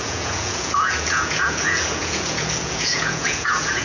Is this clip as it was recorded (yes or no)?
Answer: no